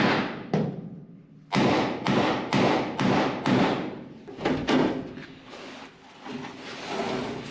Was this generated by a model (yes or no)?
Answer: no